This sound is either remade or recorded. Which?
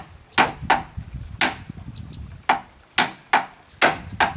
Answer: recorded